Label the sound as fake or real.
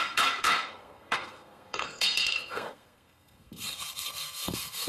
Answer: fake